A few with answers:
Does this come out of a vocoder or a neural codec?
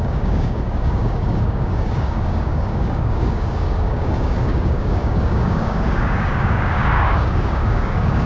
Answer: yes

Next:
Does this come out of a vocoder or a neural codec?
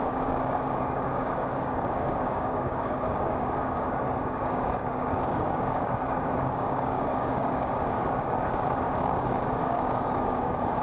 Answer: yes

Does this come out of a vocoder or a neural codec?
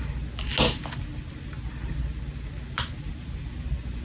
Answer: no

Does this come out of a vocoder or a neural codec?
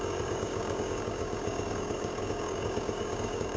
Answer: yes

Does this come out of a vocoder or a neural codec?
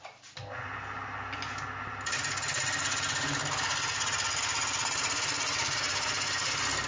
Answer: no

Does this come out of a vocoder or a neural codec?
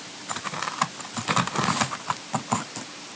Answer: no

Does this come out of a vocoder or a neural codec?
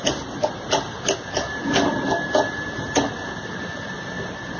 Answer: no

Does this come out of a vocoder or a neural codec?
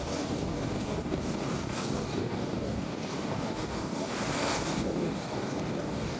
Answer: yes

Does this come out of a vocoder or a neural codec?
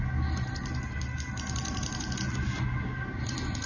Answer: no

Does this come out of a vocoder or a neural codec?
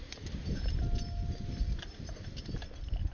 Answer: no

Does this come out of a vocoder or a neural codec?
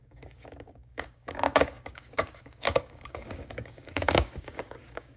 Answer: yes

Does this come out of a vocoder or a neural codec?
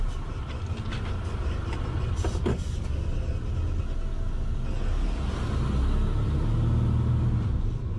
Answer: no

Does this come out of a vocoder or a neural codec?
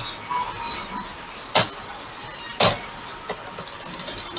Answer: no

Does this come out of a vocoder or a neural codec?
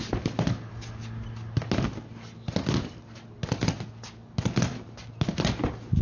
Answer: no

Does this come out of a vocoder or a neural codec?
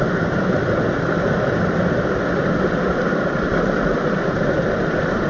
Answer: no